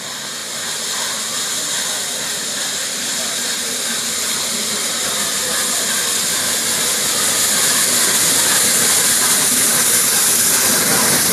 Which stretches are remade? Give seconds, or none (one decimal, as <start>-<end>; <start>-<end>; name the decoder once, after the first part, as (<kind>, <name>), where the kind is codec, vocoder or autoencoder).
none